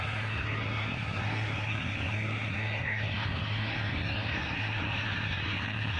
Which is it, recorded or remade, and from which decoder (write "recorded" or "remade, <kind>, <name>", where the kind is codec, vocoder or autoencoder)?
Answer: remade, codec, SNAC